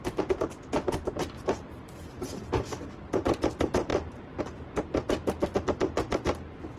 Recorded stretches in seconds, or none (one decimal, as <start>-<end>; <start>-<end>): 0.0-3.9; 4.4-6.8